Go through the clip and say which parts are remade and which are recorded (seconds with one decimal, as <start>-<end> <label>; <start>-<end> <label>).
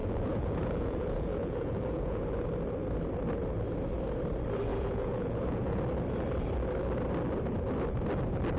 0.0-2.2 remade; 2.2-4.7 recorded; 4.7-5.8 remade; 5.8-8.6 recorded